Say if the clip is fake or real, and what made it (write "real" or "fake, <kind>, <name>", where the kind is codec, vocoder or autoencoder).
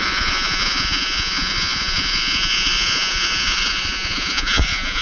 fake, vocoder, Vocos